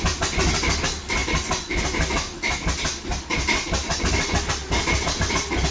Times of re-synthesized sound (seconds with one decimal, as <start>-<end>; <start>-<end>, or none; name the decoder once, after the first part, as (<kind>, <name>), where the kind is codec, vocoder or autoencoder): none

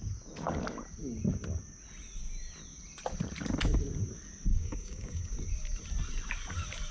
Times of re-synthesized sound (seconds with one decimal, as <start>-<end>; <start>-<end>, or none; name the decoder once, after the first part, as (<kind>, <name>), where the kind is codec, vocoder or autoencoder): 4.5-5.3 (codec, DAC)